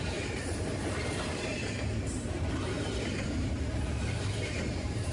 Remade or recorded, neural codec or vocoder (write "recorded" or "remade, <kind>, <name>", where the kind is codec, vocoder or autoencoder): remade, vocoder, BigVGAN v2